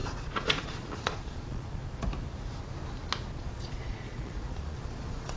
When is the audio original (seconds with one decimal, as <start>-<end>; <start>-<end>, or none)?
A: 1.8-3.4